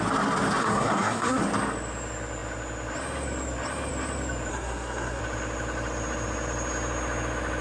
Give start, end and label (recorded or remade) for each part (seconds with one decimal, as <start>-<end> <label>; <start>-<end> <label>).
0.0-0.6 recorded; 0.6-1.4 remade; 1.4-4.5 recorded; 4.5-5.2 remade; 5.2-7.6 recorded

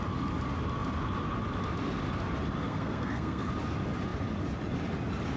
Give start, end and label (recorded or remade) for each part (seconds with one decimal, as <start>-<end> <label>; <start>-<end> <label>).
0.0-2.6 recorded; 2.6-3.5 remade; 3.5-5.4 recorded